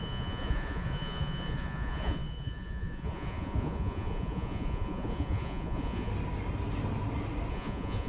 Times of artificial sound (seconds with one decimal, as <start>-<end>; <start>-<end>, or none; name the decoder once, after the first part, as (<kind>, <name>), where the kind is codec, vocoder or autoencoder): 0.0-6.1 (vocoder, Vocos); 7.5-8.1